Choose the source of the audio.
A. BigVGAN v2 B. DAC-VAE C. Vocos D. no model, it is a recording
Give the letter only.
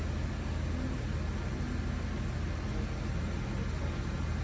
D